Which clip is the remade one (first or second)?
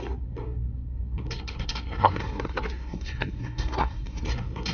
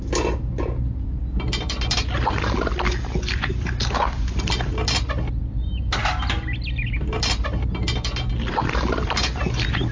first